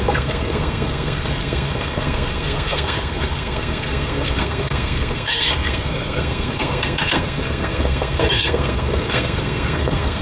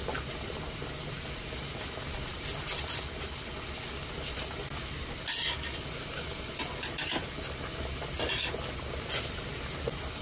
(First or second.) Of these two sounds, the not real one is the first